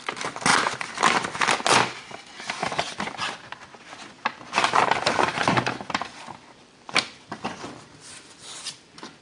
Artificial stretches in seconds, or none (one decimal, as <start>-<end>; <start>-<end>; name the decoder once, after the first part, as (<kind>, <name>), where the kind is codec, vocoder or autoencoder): 0.5-1.5 (vocoder, BigVGAN v2); 2.6-3.3; 5.3-9.2